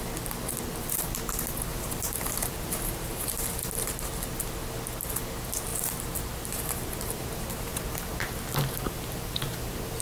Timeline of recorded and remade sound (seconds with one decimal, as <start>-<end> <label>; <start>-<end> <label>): 0.0-1.7 recorded; 1.7-3.7 remade; 3.7-5.7 recorded; 5.7-10.0 remade